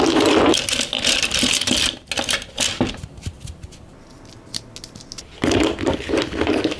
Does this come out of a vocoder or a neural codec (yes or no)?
no